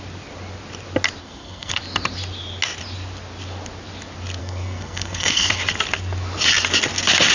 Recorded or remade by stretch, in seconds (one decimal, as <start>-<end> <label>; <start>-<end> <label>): 0.0-1.2 recorded; 1.2-1.8 remade; 1.8-4.4 recorded; 4.4-5.5 remade; 5.5-7.3 recorded